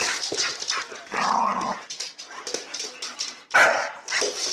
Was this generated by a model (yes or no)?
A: no